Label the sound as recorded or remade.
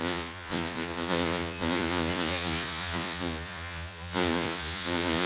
remade